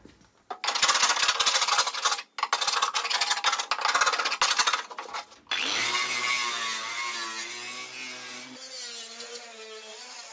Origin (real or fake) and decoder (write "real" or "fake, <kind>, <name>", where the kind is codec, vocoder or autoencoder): real